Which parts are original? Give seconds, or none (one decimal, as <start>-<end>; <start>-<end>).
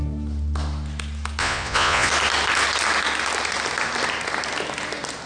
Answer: 0.0-1.4; 2.1-5.3